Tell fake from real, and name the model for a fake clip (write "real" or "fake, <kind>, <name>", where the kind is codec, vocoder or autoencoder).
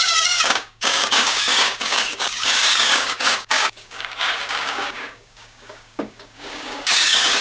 fake, codec, DAC